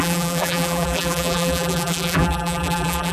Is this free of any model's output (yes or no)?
no